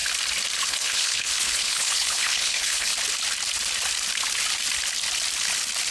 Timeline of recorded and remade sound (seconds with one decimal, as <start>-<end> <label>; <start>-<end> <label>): 0.0-0.6 recorded; 0.6-2.9 remade; 2.9-5.9 recorded